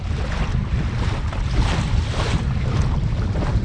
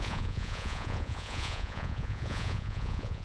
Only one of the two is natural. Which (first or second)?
first